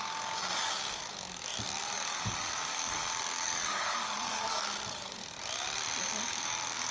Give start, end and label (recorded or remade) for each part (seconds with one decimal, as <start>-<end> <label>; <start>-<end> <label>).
0.0-5.2 remade; 5.2-6.0 recorded; 6.0-6.9 remade